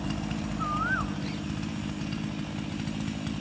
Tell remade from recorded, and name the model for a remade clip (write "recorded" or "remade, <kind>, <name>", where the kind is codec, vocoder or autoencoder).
recorded